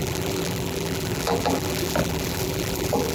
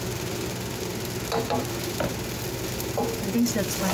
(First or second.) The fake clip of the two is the first